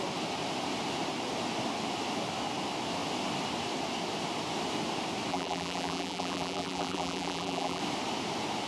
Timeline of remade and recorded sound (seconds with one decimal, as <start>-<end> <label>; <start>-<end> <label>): 0.0-5.3 recorded; 5.3-7.8 remade; 7.8-8.7 recorded